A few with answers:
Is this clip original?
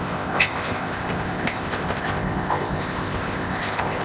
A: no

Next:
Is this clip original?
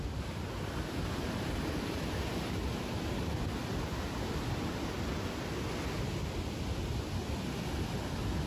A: yes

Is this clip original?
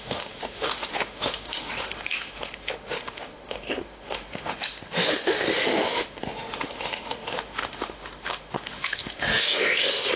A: no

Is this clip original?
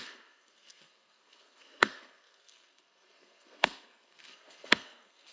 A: no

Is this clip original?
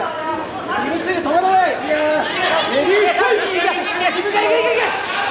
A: yes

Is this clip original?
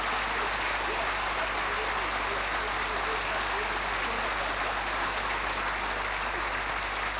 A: yes